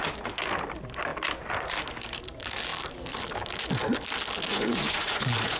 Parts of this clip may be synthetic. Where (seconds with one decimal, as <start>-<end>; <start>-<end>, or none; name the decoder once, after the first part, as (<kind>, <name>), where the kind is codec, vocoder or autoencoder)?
4.5-5.6 (vocoder, Vocos)